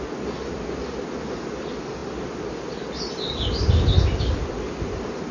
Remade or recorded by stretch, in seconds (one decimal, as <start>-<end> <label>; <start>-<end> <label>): 0.0-5.3 recorded